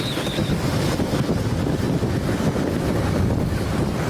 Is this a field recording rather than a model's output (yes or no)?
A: yes